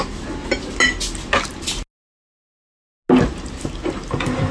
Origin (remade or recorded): recorded